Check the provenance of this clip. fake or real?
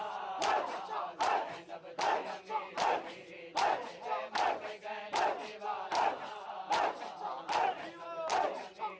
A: real